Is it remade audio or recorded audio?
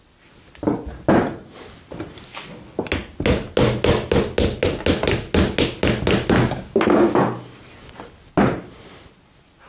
recorded